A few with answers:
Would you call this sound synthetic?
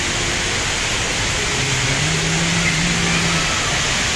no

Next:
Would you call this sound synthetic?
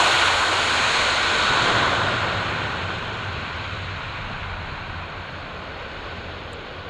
yes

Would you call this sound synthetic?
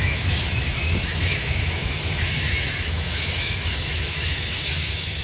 yes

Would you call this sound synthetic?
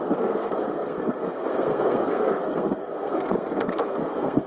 yes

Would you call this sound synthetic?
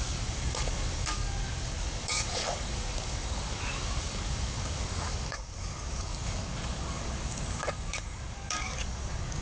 yes